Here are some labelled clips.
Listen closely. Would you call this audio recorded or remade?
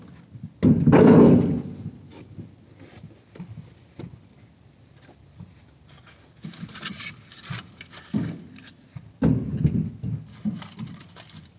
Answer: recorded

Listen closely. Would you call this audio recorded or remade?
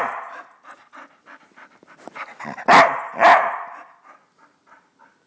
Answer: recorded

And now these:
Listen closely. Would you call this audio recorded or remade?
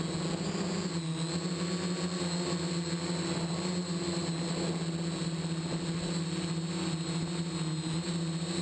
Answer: recorded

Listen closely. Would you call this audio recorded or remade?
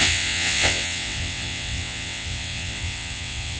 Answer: remade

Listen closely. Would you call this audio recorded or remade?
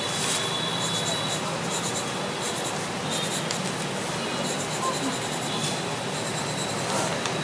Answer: recorded